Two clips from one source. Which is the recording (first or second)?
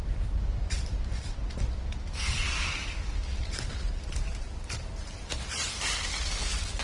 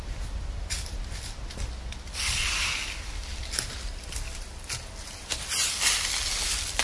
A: second